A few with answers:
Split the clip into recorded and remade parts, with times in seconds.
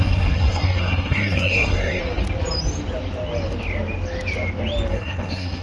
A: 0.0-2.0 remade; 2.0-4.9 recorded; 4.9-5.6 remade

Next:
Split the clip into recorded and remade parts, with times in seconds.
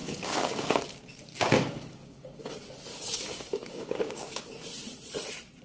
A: 0.0-0.8 remade; 0.8-1.3 recorded; 1.3-2.5 remade; 2.5-2.9 recorded; 2.9-4.4 remade; 4.4-5.6 recorded